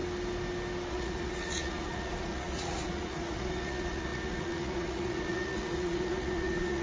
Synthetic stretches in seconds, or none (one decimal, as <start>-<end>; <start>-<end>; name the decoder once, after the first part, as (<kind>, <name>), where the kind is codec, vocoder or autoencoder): 0.9-6.8 (vocoder, Vocos)